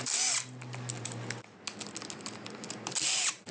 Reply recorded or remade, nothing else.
recorded